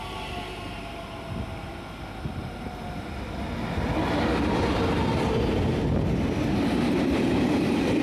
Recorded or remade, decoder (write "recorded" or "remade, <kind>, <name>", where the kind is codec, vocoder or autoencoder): recorded